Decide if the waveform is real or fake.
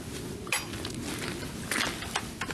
real